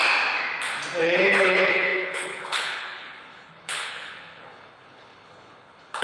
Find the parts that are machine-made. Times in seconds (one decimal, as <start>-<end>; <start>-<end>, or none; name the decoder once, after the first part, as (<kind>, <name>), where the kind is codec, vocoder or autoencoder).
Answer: 1.0-6.0 (codec, HILCodec)